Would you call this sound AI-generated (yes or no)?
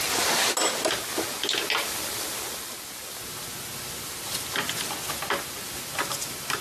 no